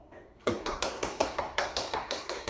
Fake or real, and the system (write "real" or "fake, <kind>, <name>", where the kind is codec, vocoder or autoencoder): fake, codec, SNAC